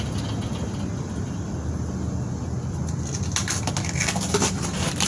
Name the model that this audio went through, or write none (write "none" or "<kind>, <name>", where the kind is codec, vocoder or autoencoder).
none